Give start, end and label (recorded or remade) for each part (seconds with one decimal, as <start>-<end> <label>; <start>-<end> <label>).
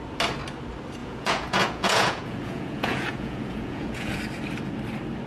0.0-1.0 recorded; 1.0-4.2 remade; 4.2-5.3 recorded